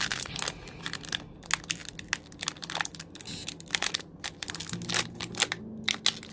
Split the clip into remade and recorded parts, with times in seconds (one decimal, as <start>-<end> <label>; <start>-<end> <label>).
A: 0.0-6.3 recorded